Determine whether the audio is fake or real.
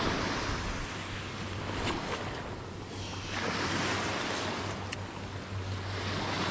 real